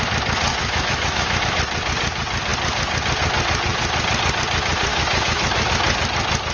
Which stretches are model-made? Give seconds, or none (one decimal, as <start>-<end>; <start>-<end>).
0.5-1.4; 4.9-5.7